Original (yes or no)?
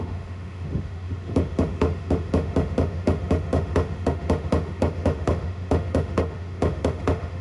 no